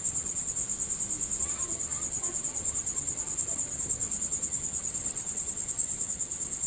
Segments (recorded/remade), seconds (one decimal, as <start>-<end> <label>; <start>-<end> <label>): 0.0-0.6 remade; 0.6-1.4 recorded; 1.4-6.7 remade